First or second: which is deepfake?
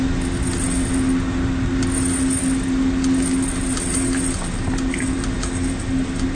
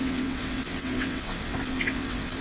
second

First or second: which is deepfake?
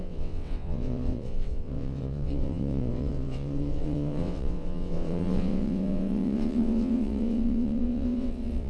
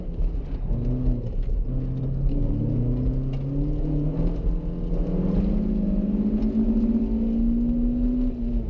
first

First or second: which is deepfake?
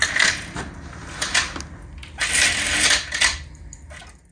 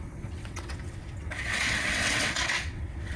second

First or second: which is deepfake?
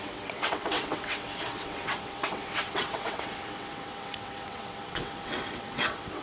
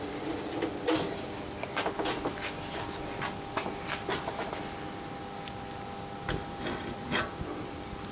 first